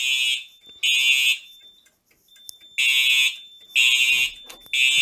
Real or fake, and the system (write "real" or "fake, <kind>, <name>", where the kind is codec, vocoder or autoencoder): real